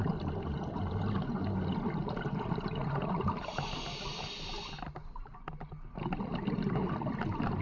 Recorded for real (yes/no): yes